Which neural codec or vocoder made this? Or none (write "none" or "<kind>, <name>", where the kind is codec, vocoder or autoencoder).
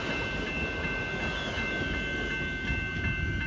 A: none